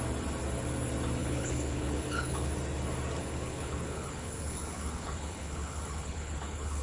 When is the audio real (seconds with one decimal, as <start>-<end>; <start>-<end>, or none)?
0.0-1.2; 2.5-3.2